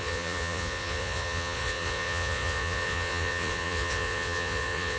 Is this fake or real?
fake